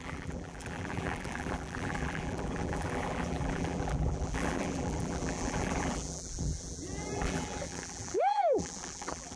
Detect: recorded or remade remade